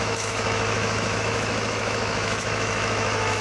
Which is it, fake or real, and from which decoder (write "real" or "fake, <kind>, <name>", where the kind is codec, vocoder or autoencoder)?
fake, autoencoder, DAC-VAE